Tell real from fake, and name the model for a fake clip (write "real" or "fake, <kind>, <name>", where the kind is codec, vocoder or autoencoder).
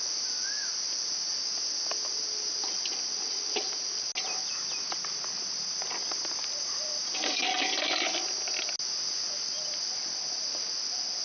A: real